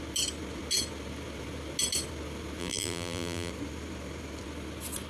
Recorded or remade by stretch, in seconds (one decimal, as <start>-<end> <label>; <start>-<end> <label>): 0.0-2.6 recorded; 2.6-3.5 remade; 3.5-5.1 recorded